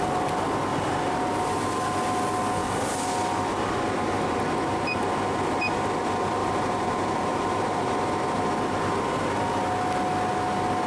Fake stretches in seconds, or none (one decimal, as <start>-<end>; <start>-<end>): 0.7-1.8; 6.4-7.9